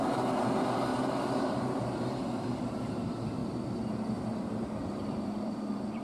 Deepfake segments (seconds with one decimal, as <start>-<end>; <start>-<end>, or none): 0.0-6.0